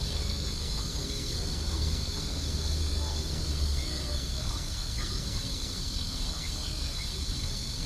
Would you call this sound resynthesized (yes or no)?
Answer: yes